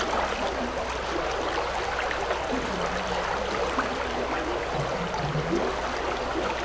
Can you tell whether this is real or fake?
real